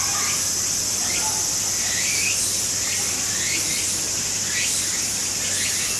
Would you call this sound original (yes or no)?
yes